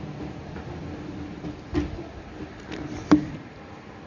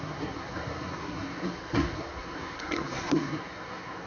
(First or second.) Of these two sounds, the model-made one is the second